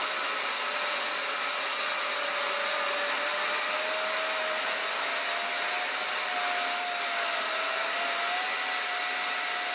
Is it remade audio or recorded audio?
recorded